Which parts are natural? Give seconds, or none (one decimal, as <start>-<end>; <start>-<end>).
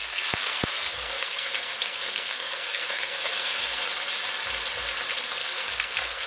3.8-5.4